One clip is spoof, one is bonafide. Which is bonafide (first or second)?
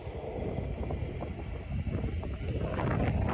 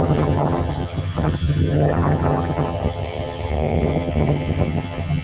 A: first